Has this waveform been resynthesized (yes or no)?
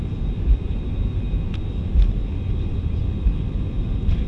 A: no